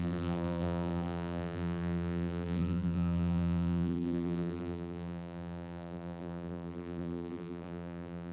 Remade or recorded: remade